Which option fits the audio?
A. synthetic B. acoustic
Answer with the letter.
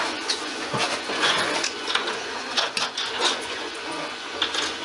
A